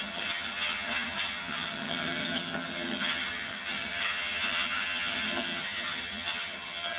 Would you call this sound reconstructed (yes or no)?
yes